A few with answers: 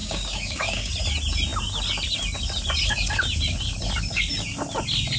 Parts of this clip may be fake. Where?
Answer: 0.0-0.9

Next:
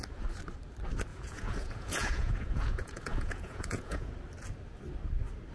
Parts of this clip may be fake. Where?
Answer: 1.1-4.1

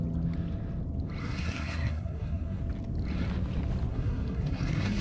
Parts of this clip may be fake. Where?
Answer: 1.2-2.6; 3.9-5.0

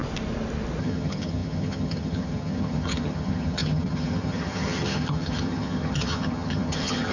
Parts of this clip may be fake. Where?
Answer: 0.8-7.1

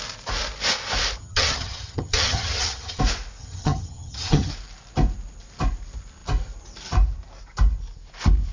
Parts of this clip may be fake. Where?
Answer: 1.2-3.0; 3.4-4.5

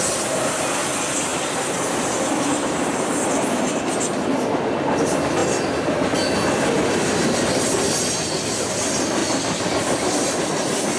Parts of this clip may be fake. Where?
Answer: none